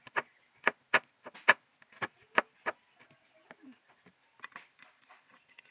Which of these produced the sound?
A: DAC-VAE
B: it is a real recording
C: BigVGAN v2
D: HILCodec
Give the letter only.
B